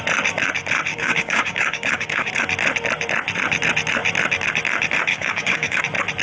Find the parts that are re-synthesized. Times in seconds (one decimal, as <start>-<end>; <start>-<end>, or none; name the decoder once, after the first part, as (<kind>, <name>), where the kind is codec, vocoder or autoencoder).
0.9-2.3 (codec, DAC); 5.1-5.8